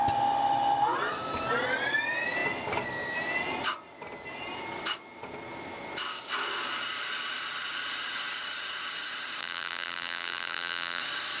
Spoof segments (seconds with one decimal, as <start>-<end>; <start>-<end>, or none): 9.4-11.0